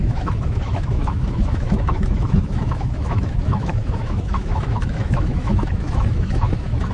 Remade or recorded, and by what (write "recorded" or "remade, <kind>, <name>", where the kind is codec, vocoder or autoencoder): remade, autoencoder, DAC-VAE